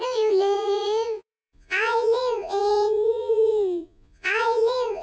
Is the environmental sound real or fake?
fake